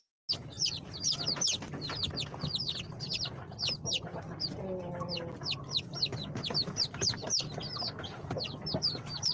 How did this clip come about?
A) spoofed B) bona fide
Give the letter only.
B